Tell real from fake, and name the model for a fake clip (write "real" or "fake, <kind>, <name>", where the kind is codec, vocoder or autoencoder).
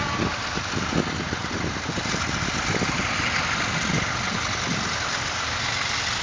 real